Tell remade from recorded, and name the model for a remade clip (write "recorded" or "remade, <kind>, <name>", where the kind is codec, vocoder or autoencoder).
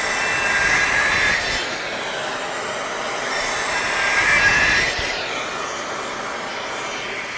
recorded